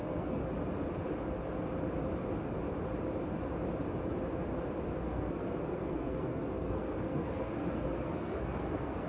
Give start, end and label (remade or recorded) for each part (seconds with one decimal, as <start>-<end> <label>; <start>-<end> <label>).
0.0-0.4 remade; 0.4-5.0 recorded; 5.0-9.1 remade

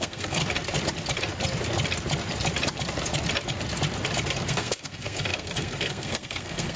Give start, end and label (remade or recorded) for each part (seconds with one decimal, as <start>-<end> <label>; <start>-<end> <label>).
0.0-0.4 remade; 0.4-4.5 recorded; 4.5-6.8 remade